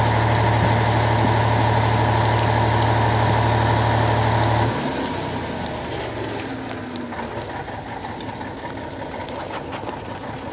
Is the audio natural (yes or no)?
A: yes